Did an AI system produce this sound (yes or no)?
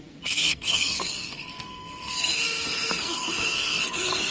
yes